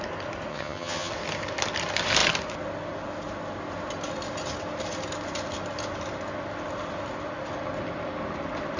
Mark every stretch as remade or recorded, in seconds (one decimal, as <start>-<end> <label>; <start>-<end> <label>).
0.0-0.5 recorded; 0.5-1.1 remade; 1.1-8.8 recorded